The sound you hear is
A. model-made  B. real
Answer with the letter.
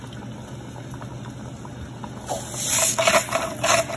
B